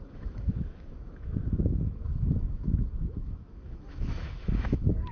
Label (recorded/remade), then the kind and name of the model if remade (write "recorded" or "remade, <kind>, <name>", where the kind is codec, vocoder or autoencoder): remade, autoencoder, DAC-VAE